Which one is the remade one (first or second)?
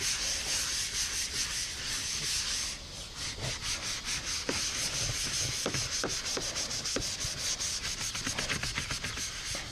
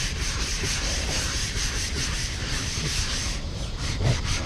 second